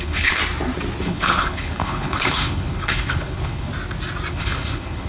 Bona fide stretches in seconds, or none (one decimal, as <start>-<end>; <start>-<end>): 0.4-1.0; 3.7-4.3